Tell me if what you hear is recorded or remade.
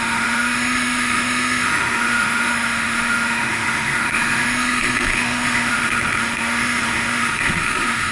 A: remade